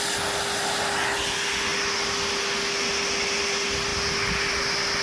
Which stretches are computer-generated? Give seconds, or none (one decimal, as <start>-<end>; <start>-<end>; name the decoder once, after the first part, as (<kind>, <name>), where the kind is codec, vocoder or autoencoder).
none